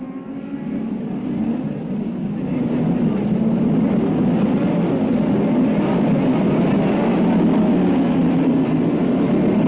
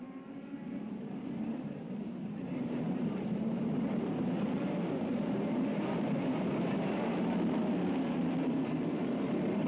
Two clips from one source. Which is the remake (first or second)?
second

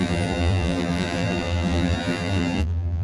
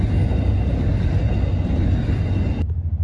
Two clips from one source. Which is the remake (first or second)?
first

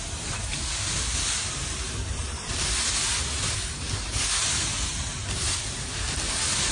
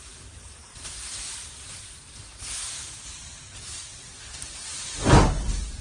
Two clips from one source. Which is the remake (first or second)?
second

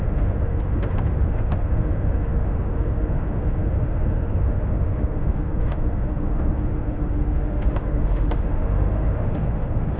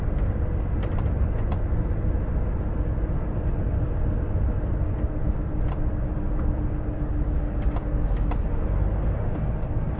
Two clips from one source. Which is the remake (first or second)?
first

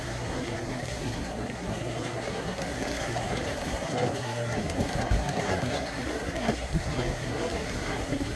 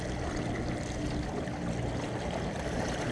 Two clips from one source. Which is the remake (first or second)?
first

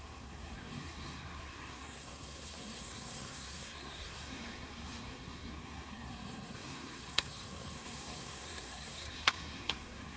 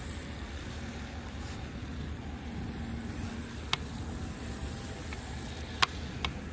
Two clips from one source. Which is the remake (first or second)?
first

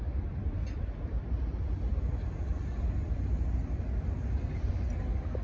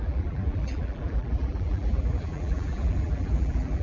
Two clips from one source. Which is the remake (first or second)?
second